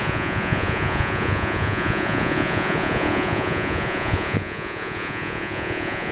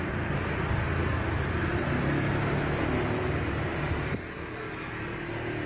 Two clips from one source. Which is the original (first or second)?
second